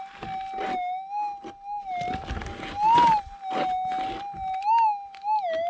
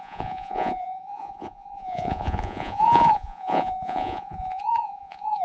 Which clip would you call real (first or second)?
first